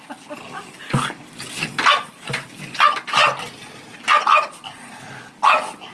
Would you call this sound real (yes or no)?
yes